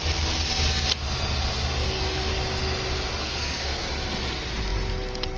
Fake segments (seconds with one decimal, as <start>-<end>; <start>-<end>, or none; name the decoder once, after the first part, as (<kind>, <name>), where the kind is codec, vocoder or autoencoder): 1.8-2.3 (codec, SNAC); 3.2-3.9

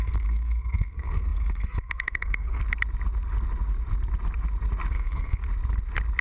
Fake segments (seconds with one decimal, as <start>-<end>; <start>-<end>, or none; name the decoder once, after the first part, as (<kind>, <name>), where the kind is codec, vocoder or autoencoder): 0.0-2.6 (codec, SNAC); 4.9-5.4

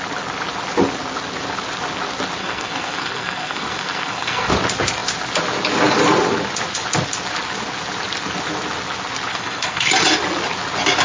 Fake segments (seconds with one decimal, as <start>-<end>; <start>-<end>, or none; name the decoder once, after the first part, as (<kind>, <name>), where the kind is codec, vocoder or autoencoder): 2.4-4.5 (codec, SNAC); 9.3-9.9

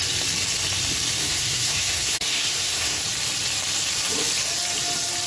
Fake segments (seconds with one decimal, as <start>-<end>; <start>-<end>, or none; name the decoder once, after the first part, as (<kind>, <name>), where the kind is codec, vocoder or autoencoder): 1.2-3.0 (codec, SNAC)

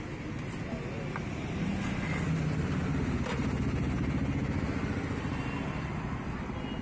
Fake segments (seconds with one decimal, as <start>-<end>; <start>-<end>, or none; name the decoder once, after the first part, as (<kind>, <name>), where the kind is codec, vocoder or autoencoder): none

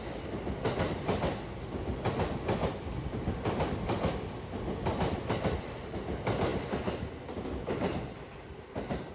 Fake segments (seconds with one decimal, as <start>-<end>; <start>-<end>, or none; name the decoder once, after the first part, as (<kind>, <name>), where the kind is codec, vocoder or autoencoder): none